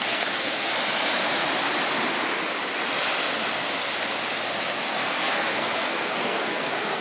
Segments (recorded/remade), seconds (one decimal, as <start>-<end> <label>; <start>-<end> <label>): 0.0-0.7 remade; 0.7-4.6 recorded; 4.6-7.0 remade